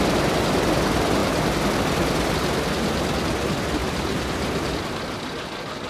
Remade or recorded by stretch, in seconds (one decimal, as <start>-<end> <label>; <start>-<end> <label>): 0.0-5.9 recorded